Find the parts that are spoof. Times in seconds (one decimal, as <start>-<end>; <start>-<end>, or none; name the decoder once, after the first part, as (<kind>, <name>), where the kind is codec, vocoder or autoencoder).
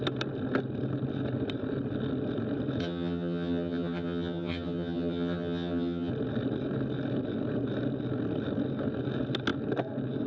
2.8-6.1 (vocoder, HiFi-GAN)